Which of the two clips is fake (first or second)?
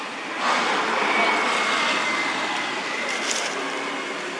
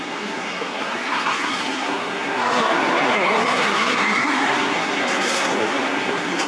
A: second